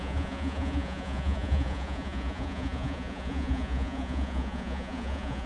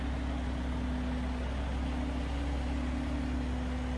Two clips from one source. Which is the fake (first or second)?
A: first